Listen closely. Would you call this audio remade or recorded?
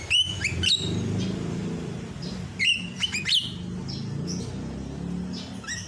recorded